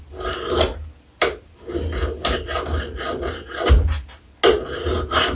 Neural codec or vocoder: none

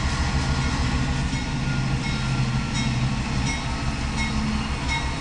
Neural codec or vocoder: none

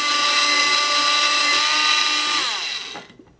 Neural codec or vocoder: none